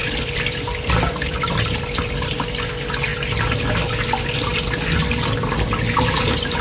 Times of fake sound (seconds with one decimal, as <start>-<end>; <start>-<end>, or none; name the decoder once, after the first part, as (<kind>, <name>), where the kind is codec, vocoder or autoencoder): 0.0-2.3 (vocoder, BigVGAN v2)